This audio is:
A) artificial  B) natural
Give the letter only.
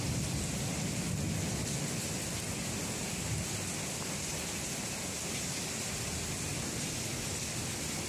B